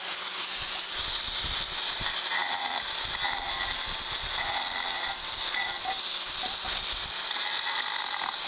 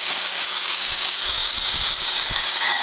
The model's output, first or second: second